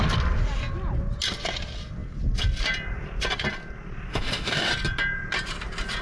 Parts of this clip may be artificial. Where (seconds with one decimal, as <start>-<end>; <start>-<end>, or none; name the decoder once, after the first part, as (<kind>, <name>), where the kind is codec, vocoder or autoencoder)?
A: 4.1-4.7 (autoencoder, DAC-VAE)